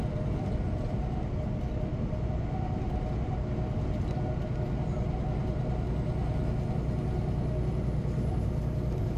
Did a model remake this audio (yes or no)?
no